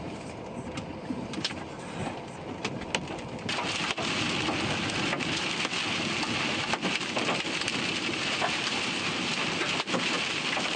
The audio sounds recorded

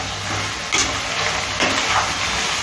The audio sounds recorded